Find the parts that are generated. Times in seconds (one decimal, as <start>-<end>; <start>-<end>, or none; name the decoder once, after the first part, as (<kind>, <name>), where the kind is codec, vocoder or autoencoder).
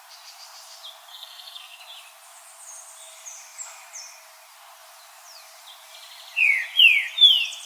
1.1-1.8 (codec, SNAC)